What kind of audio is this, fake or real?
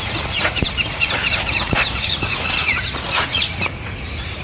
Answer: fake